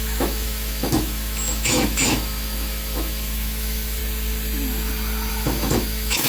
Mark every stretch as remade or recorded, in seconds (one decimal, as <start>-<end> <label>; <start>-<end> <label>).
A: 0.0-4.0 remade; 4.0-5.3 recorded; 5.3-6.3 remade